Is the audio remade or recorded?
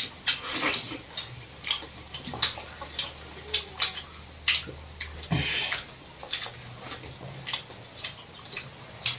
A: recorded